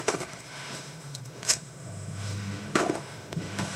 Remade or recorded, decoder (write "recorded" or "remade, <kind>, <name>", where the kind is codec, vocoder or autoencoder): remade, autoencoder, DAC-VAE